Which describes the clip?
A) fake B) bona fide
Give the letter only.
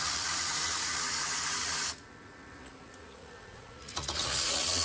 A